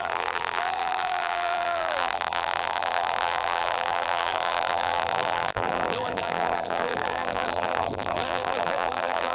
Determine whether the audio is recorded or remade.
remade